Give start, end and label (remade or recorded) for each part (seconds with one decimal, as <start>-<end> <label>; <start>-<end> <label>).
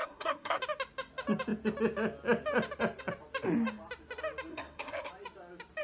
0.0-0.6 remade; 0.6-4.5 recorded; 4.5-5.1 remade; 5.1-5.8 recorded